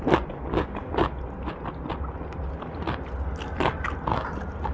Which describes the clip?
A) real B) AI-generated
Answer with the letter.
A